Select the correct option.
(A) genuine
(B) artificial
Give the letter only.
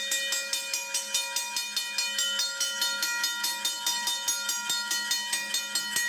A